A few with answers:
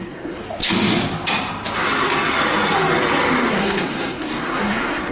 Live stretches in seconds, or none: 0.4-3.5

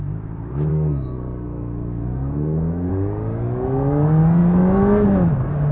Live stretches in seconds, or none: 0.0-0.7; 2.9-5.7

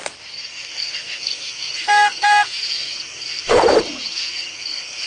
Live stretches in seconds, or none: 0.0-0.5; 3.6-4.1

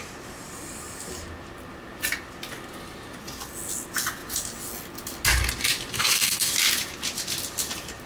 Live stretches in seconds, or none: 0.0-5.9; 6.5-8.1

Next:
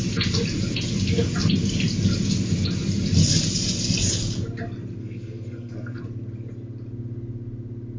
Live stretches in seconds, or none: 0.0-5.0; 6.0-8.0

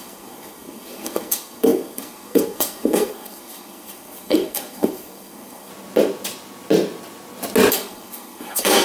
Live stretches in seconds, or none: 5.7-7.7

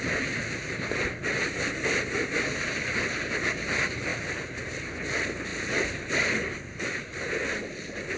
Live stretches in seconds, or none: 0.0-8.2

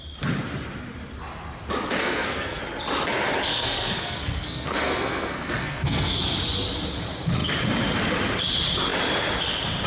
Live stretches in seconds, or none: 0.0-2.0; 2.6-3.5; 6.2-9.9